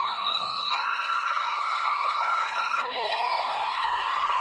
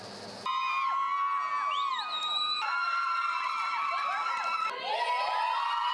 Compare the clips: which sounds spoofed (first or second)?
first